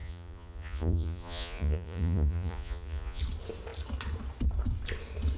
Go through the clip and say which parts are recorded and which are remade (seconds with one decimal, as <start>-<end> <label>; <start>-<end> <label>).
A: 0.0-3.2 remade; 3.2-5.4 recorded